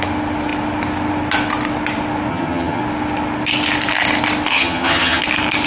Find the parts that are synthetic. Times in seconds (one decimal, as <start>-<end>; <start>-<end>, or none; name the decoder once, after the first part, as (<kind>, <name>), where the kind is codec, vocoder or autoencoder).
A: 2.3-2.8 (vocoder, HiFi-GAN); 4.5-5.2